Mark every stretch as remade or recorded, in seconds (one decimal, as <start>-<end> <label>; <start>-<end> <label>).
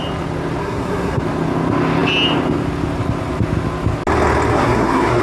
0.0-0.6 recorded; 0.6-1.2 remade; 1.2-4.5 recorded; 4.5-5.2 remade